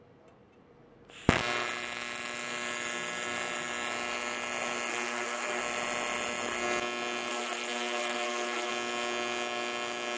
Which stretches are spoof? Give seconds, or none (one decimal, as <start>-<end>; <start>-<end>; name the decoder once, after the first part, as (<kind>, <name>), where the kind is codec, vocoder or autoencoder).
4.9-5.6 (codec, SNAC); 7.3-8.7

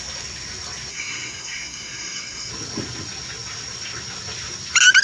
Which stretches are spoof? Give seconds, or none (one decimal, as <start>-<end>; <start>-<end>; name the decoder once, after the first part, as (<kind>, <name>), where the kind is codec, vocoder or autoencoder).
0.9-2.5 (codec, SNAC)

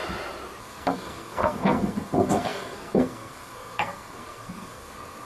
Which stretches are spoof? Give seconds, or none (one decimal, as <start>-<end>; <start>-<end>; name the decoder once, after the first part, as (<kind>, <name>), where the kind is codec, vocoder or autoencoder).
0.6-5.3 (codec, SNAC)

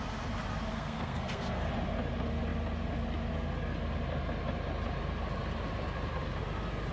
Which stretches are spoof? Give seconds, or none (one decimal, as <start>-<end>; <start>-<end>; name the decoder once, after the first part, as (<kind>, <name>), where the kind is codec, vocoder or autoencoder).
0.7-1.7 (codec, SNAC)

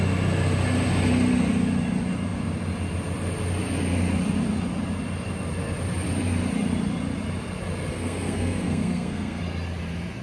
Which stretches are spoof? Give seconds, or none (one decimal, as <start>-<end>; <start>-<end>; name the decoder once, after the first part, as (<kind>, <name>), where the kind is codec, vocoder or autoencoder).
7.9-9.4 (codec, SNAC)

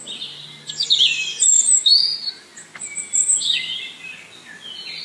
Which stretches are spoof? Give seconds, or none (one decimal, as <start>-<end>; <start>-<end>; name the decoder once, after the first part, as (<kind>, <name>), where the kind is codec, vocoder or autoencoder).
none